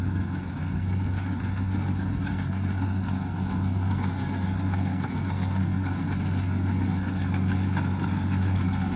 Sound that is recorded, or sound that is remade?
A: remade